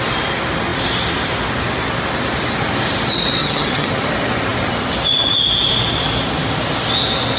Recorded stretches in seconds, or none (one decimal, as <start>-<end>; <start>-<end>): 0.0-3.4; 3.9-7.4